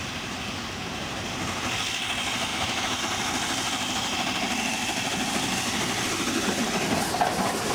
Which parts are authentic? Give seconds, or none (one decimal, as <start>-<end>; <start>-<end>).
0.0-2.5; 3.0-7.7